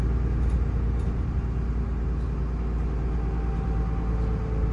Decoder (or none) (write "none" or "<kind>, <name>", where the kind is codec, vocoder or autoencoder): none